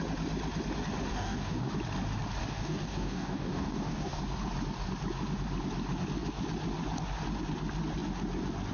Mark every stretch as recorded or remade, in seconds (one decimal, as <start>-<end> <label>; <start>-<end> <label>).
0.0-1.1 recorded; 1.1-1.7 remade; 1.7-2.4 recorded; 2.4-4.2 remade; 4.2-8.7 recorded